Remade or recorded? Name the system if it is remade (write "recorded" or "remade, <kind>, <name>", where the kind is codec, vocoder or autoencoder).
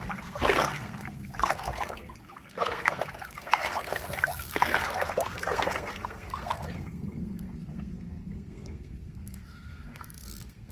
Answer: remade, codec, SNAC